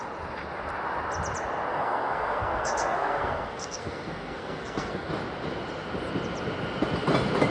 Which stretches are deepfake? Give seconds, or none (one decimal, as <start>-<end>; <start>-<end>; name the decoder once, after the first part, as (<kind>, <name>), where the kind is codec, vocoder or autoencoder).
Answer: 1.7-5.1 (codec, SNAC)